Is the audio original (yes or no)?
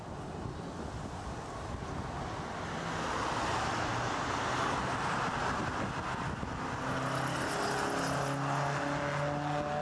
yes